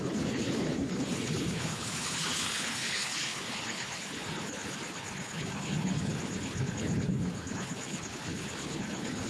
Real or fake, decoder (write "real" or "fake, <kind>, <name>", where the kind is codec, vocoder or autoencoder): fake, codec, HILCodec